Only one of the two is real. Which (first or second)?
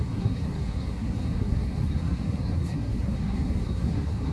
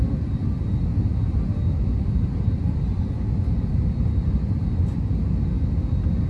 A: second